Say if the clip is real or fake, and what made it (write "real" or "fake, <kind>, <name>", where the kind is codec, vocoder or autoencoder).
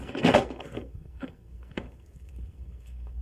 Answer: fake, codec, SNAC